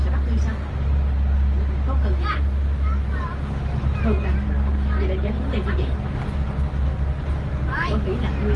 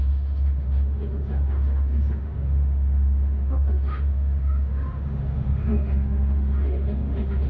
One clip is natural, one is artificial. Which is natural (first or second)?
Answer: first